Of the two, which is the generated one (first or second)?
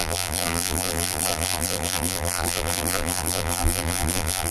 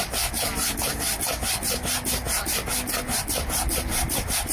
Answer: first